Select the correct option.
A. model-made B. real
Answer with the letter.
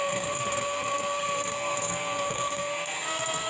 A